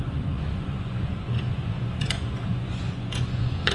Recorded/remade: remade